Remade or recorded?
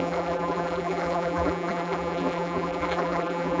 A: remade